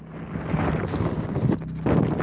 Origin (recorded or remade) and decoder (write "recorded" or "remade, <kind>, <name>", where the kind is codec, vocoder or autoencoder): recorded